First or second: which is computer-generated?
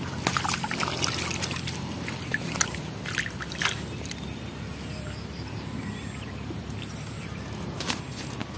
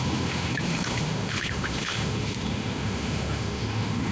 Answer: second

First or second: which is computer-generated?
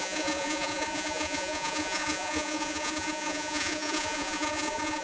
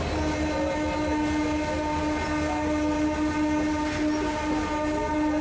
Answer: first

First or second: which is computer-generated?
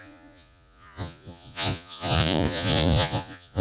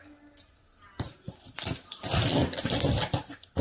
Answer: first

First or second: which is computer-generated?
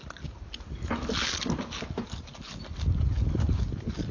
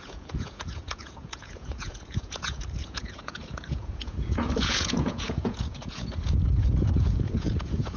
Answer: second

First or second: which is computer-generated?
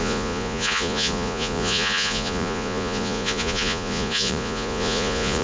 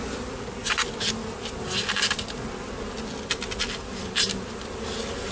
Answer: first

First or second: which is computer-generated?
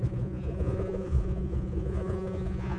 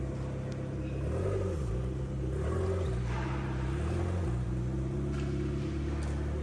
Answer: first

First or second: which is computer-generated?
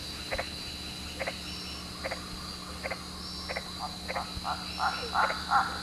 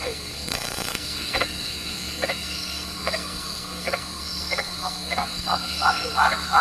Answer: second